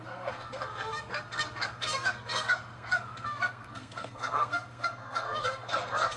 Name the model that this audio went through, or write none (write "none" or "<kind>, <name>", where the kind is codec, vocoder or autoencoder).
codec, SNAC